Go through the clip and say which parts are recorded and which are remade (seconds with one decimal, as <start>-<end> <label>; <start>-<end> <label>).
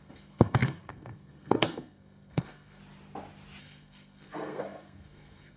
0.0-2.8 remade; 2.8-3.6 recorded; 3.6-5.6 remade